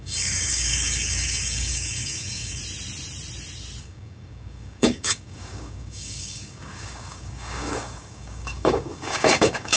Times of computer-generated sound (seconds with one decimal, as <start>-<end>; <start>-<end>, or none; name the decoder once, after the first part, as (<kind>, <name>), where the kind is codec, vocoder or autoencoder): 0.0-2.6 (codec, DAC); 3.8-9.8